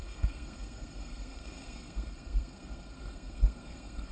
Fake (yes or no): yes